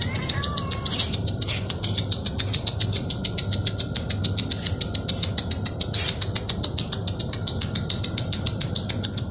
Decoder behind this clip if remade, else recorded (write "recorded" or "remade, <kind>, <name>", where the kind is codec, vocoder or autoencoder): remade, vocoder, BigVGAN v2